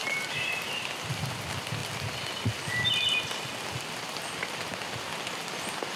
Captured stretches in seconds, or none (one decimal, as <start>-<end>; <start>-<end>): 1.4-6.0